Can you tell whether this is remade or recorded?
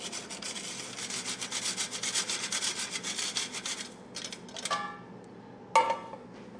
recorded